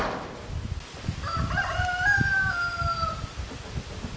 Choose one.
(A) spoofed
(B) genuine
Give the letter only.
B